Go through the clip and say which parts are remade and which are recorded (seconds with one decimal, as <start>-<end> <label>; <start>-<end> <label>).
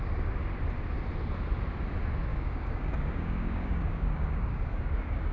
0.0-2.3 recorded; 2.3-5.3 remade